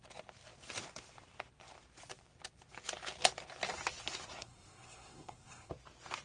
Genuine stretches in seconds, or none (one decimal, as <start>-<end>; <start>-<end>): 0.0-4.4; 5.7-6.2